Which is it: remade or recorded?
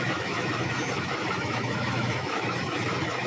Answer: remade